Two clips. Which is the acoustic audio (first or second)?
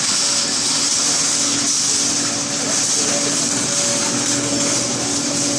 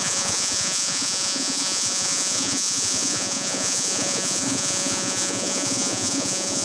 first